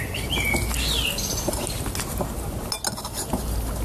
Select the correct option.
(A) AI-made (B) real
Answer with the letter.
B